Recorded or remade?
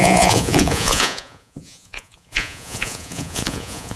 remade